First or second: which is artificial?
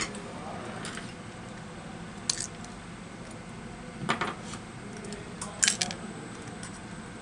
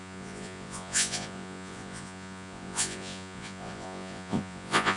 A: second